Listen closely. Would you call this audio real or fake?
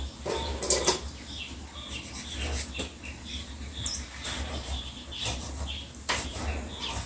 real